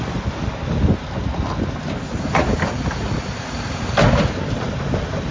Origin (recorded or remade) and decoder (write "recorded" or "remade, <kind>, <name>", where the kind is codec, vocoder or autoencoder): recorded